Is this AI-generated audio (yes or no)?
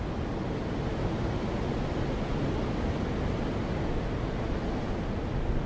no